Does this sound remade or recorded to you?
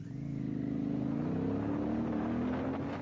recorded